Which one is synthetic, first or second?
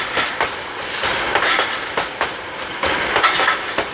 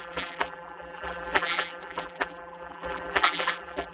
second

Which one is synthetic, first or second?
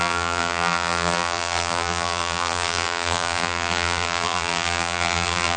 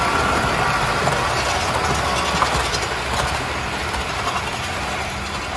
first